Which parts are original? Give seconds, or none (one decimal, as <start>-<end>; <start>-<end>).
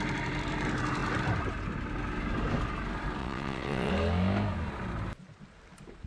0.0-3.2; 3.9-6.1